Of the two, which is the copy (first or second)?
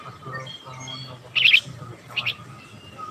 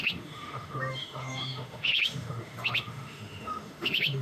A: second